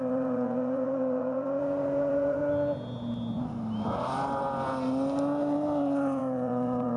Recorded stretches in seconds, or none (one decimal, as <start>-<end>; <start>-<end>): 2.4-6.2